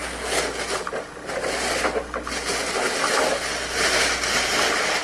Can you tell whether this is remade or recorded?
recorded